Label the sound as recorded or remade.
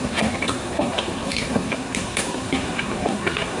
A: remade